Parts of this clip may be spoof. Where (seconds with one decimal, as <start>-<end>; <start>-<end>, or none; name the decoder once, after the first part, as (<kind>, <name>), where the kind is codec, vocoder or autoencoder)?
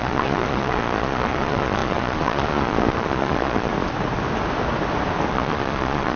0.0-3.7 (vocoder, Vocos); 5.3-6.2